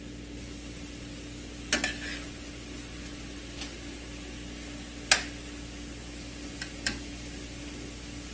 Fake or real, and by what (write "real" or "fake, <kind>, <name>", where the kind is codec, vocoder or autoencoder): real